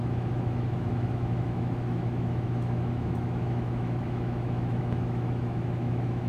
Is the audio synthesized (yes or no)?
yes